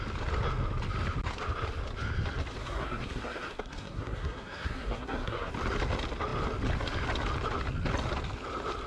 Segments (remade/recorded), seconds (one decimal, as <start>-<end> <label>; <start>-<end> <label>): 0.0-2.6 recorded; 2.6-5.5 remade; 5.5-8.9 recorded